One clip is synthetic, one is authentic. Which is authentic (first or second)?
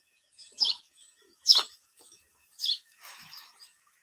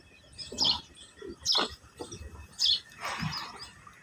second